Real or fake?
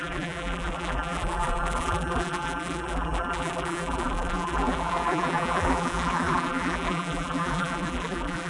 fake